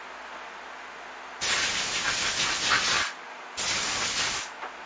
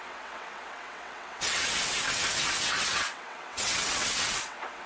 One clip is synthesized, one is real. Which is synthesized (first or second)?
second